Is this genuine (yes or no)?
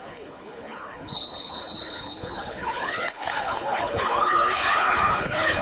no